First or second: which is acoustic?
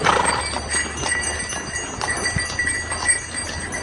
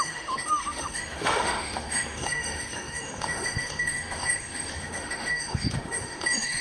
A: first